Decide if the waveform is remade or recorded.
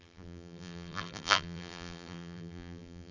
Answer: remade